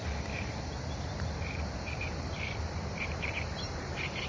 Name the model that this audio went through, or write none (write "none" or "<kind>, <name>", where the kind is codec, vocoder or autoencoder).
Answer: vocoder, BigVGAN v2